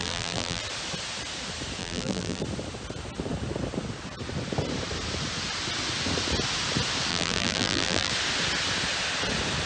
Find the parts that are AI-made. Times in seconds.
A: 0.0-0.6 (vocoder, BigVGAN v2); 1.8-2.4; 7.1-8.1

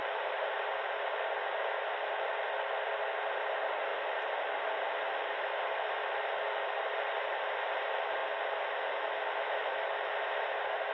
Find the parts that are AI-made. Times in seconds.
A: 0.0-0.6 (vocoder, BigVGAN v2); 3.9-5.9